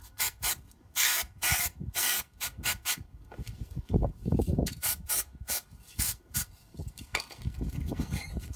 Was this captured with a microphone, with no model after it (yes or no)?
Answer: no